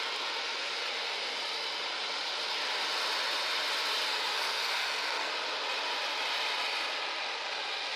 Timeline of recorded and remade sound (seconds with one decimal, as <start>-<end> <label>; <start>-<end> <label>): 0.0-4.1 recorded; 4.1-5.3 remade; 5.3-8.0 recorded